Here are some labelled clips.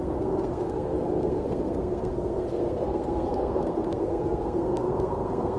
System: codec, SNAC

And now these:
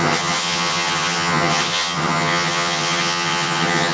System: vocoder, HiFi-GAN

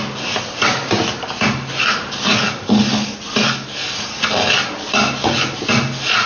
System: none